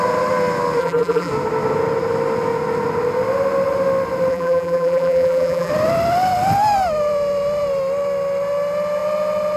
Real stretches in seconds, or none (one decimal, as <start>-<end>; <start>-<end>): 0.0-0.8; 1.3-4.3; 5.7-9.6